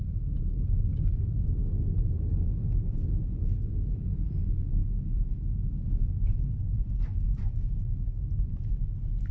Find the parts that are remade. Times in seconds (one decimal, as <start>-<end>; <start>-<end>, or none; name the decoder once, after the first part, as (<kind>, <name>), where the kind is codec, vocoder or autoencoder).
none